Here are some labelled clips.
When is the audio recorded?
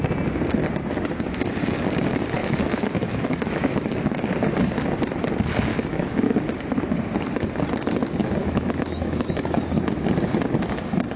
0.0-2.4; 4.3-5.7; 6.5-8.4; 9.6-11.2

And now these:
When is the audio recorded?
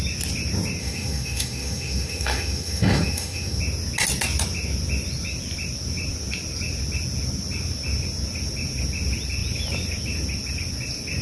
0.0-0.8; 3.6-11.2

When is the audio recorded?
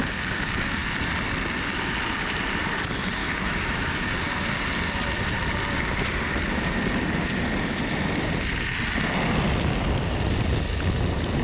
0.0-3.2; 4.0-11.4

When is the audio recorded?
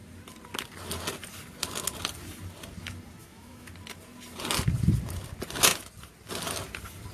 0.0-3.2; 3.7-7.1